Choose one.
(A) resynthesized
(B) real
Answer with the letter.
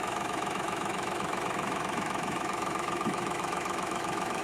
A